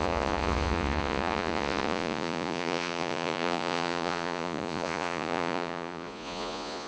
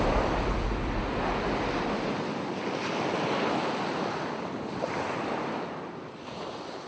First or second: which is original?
second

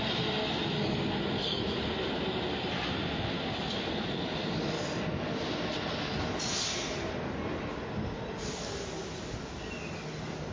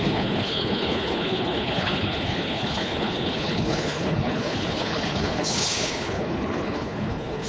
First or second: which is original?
first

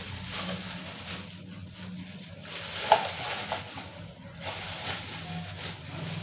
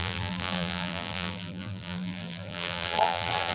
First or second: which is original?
first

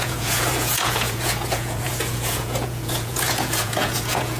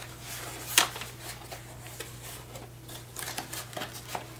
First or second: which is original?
second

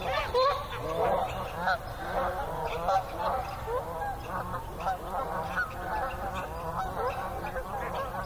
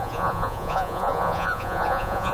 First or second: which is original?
first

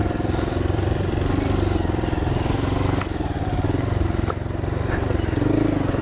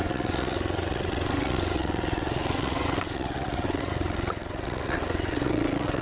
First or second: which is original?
first